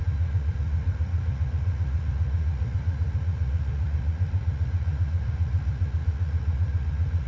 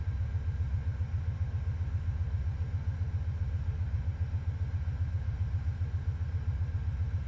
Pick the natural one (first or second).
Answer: second